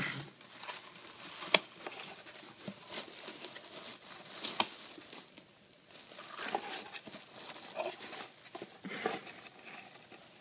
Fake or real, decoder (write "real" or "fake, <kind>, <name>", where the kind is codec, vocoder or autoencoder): real